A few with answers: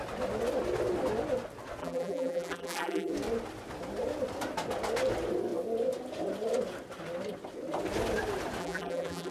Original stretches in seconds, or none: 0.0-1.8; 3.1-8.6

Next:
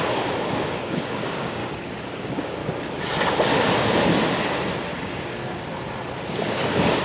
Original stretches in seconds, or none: 1.6-2.2; 2.6-6.3

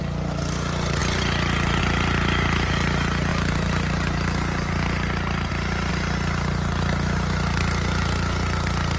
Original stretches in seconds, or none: 0.0-3.3; 5.9-9.0

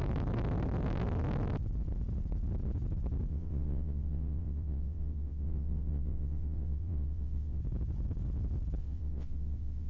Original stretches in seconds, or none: 0.0-3.3; 7.6-8.8

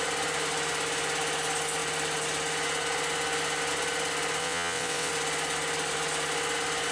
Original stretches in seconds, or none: 0.0-4.4; 5.1-6.9

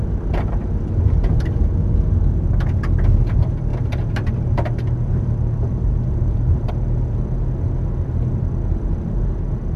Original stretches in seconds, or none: 0.0-3.7; 6.7-9.8

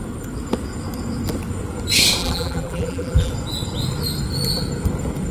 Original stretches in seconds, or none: 0.0-2.2; 3.3-5.3

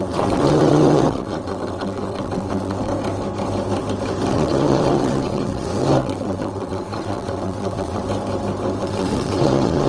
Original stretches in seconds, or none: 2.9-4.3; 8.0-8.8